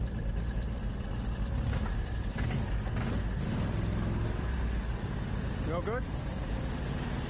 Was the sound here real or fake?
real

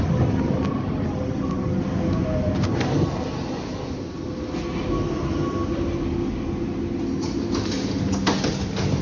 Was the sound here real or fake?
real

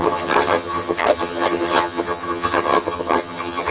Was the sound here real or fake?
fake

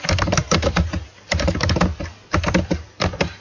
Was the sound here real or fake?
fake